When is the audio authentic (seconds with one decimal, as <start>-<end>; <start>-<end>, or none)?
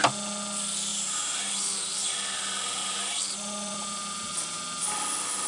0.0-0.9; 2.1-2.8; 4.3-5.5